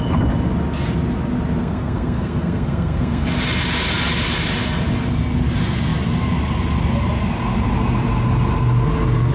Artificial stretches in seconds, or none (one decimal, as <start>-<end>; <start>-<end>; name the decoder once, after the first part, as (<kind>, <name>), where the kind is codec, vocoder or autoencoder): 1.6-3.3 (codec, SNAC)